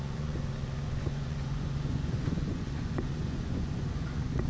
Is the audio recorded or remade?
remade